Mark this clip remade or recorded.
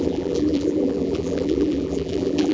remade